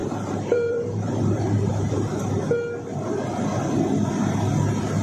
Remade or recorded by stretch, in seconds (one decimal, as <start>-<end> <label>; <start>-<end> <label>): 0.0-1.9 remade; 1.9-5.0 recorded